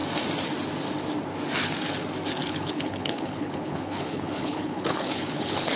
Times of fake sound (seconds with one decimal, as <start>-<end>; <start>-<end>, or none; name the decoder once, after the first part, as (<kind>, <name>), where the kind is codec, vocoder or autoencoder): 2.4-5.8 (codec, HILCodec)